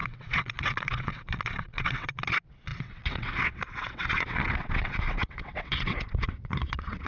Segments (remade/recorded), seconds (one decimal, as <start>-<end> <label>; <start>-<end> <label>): 0.0-7.1 remade